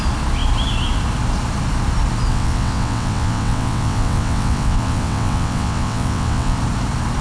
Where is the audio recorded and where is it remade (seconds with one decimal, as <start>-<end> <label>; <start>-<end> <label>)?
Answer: 0.0-2.3 recorded; 2.3-6.6 remade; 6.6-7.2 recorded